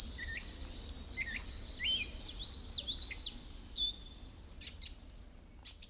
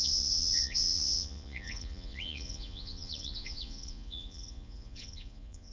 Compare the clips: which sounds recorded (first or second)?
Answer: first